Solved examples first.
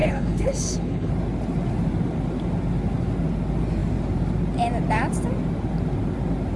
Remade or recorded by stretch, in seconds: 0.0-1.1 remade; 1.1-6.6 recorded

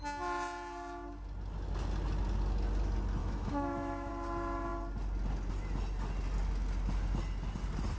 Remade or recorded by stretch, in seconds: 0.0-3.2 recorded; 3.2-4.1 remade; 4.1-8.0 recorded